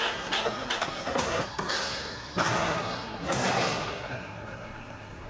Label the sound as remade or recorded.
remade